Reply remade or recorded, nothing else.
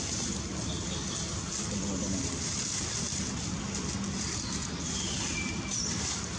recorded